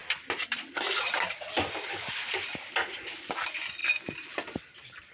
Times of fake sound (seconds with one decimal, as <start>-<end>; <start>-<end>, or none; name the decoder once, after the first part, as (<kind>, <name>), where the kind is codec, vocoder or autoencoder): 0.0-1.7 (vocoder, BigVGAN v2); 3.8-4.6